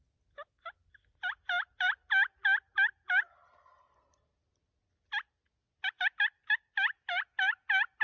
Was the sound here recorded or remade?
recorded